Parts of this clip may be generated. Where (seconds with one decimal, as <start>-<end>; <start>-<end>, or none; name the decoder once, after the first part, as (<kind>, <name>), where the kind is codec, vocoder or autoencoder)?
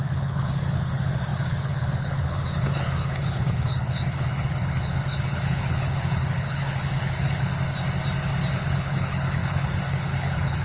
0.0-7.5 (codec, HILCodec); 8.5-10.6